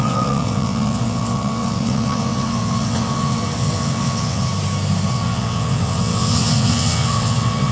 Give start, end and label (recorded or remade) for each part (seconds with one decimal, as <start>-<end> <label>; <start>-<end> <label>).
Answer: 0.0-4.5 remade; 4.5-5.1 recorded; 5.1-7.7 remade